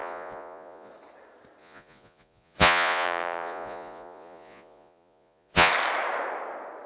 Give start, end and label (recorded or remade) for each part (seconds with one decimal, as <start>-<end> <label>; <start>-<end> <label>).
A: 0.0-0.9 remade; 0.9-1.6 recorded; 1.6-5.7 remade; 5.7-6.9 recorded